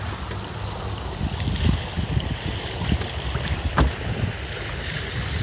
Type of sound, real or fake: real